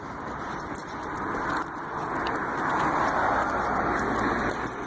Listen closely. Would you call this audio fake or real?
real